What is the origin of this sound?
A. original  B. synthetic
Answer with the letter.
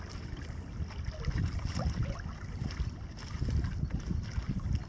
A